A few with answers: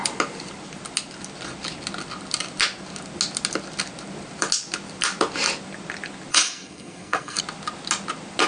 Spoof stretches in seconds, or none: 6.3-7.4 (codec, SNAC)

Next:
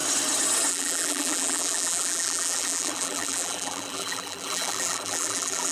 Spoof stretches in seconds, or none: 0.7-5.7 (vocoder, BigVGAN v2)